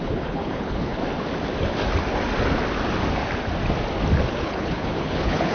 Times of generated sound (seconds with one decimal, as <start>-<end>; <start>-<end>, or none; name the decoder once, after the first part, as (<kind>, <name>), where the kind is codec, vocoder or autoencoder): 0.0-1.0 (codec, HILCodec); 4.3-5.5